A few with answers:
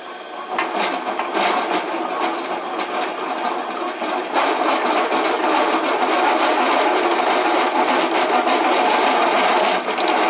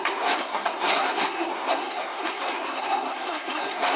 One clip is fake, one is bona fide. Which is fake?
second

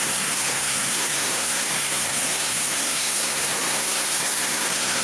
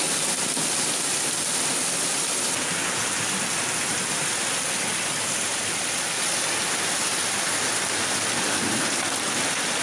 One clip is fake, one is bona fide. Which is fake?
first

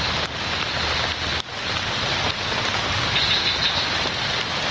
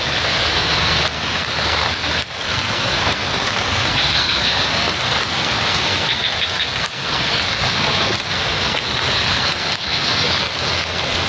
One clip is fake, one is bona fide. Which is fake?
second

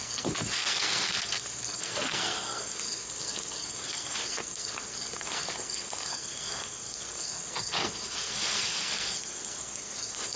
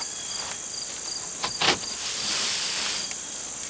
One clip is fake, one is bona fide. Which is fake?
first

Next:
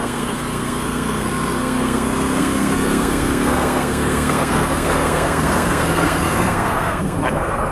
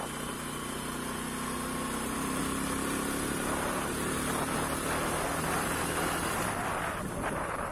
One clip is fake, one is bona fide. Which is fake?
first